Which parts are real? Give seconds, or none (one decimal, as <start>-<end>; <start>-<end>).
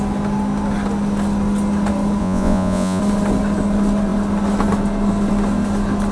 0.0-2.2; 3.0-6.1